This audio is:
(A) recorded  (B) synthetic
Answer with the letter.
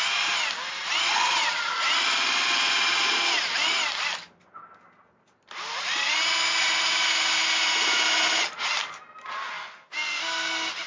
A